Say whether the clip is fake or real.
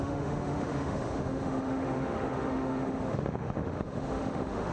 fake